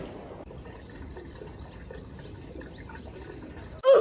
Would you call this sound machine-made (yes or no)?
no